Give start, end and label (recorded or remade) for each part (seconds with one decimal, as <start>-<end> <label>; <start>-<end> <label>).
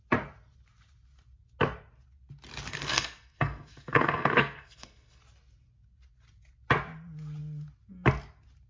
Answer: 0.0-2.7 recorded; 2.7-5.2 remade; 5.2-8.7 recorded